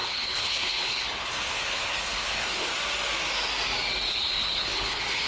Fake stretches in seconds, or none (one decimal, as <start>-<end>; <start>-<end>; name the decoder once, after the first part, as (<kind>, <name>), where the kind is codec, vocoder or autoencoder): 0.0-2.7 (codec, HILCodec); 4.1-5.3